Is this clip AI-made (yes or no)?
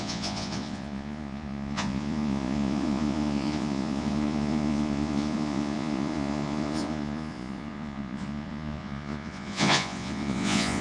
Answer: yes